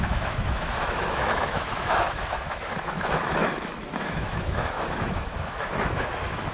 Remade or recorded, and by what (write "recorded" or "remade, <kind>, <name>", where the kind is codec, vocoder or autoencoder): remade, autoencoder, DAC-VAE